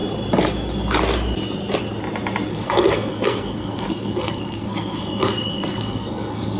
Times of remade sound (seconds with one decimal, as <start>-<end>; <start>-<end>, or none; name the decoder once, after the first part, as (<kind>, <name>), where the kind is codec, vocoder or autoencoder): 2.5-6.6 (codec, SNAC)